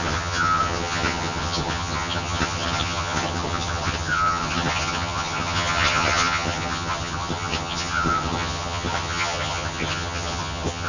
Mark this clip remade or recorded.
remade